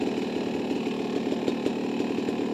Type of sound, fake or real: real